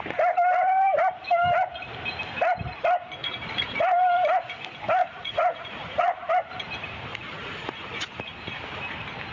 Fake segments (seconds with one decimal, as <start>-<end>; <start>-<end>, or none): 3.2-3.8; 5.0-6.3; 7.1-8.2